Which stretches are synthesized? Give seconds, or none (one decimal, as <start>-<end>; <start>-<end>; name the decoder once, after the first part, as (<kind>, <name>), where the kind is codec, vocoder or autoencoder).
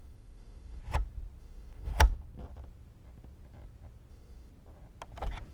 0.0-0.8 (autoencoder, DAC-VAE); 1.4-1.9; 4.1-4.5